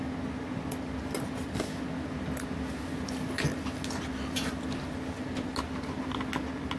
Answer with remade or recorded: recorded